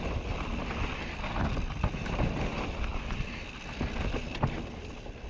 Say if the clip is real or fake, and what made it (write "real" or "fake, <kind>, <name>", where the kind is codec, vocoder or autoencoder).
real